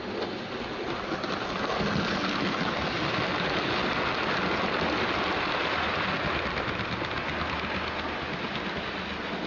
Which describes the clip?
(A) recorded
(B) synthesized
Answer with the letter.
A